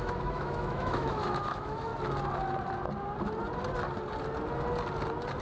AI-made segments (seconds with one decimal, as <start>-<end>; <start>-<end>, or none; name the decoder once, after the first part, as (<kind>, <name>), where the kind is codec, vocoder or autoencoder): 0.0-1.9 (autoencoder, DAC-VAE)